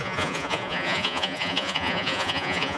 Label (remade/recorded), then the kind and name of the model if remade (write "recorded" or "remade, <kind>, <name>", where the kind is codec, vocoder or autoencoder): remade, vocoder, Vocos